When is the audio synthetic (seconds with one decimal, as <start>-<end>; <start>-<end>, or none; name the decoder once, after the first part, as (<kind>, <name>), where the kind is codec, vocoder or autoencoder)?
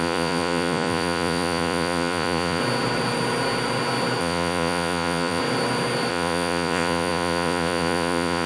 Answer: 0.0-2.6 (vocoder, Vocos); 4.2-5.4; 6.1-8.5